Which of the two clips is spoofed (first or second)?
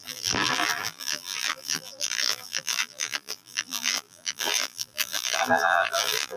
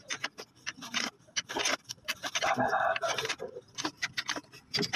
first